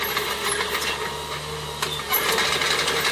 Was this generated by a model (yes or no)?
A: no